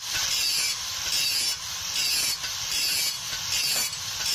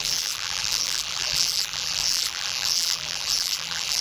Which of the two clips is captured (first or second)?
first